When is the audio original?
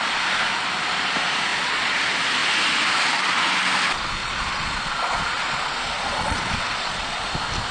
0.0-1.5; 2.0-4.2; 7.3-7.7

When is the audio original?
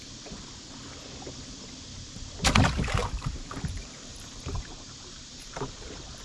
0.0-3.0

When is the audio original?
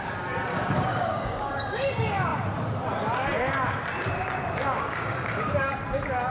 0.0-0.5; 1.9-4.6; 5.4-6.3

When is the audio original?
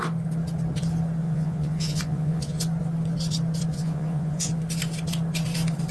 0.0-1.2; 2.6-3.7; 4.5-5.9